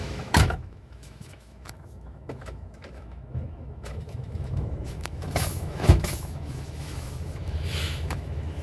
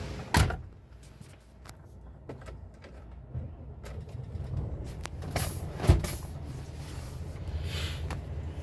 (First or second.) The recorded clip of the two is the second